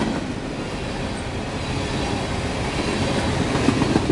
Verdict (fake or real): real